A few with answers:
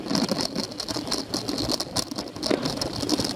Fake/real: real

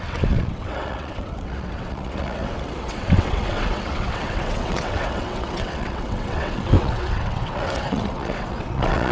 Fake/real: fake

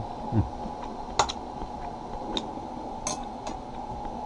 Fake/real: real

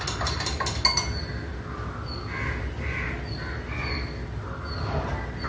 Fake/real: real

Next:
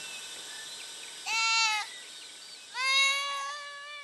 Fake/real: real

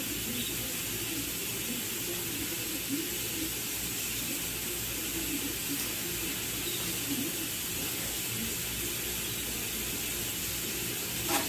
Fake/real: real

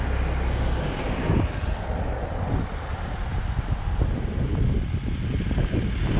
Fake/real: real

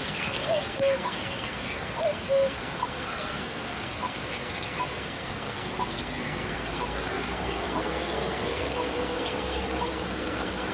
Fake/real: fake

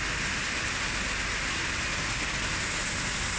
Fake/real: real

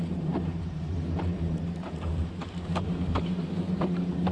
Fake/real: fake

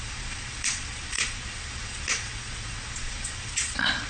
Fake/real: fake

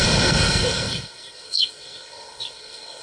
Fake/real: fake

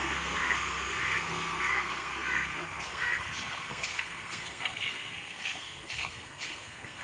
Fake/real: fake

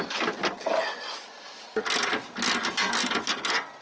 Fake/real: real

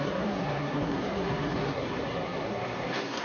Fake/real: fake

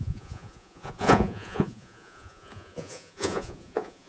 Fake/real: fake